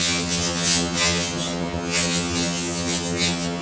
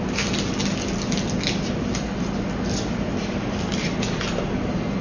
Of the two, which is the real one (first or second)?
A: second